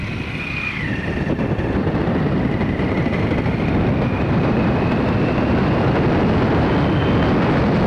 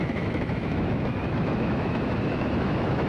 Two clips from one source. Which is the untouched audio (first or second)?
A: first